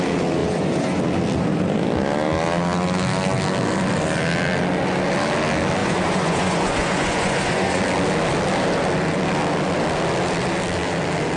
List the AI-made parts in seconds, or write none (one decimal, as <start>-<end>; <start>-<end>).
0.4-1.0; 5.8-7.8